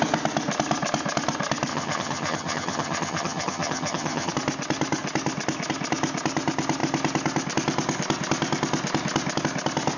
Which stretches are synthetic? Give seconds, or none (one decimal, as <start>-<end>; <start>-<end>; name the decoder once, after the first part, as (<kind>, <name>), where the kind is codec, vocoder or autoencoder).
1.7-4.3 (vocoder, HiFi-GAN)

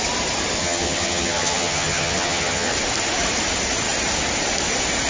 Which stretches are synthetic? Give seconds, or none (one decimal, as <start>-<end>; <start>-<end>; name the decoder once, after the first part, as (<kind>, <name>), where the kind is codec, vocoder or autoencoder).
0.6-2.7 (vocoder, HiFi-GAN)

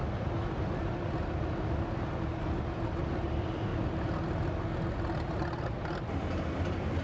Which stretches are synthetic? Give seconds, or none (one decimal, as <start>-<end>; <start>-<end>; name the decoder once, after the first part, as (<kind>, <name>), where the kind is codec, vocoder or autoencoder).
none

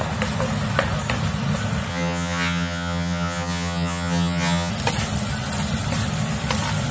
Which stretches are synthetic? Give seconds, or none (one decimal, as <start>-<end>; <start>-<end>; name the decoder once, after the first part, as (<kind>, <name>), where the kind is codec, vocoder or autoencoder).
1.9-4.7 (vocoder, HiFi-GAN)